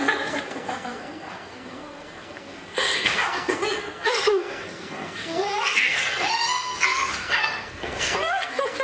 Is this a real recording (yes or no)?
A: no